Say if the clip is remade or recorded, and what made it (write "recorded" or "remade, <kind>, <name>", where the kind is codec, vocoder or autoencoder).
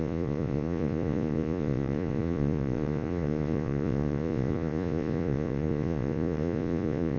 remade, vocoder, Vocos